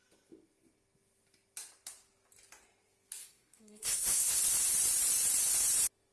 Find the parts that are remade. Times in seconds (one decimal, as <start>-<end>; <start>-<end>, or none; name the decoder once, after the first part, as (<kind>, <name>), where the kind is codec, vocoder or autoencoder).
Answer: 3.2-4.4 (codec, SNAC)